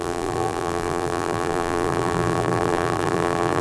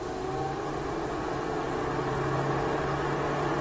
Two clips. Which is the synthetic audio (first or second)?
first